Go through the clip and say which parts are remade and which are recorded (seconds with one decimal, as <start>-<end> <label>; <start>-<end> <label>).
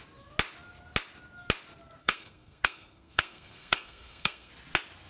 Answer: 0.0-2.0 recorded; 2.0-4.5 remade; 4.5-5.1 recorded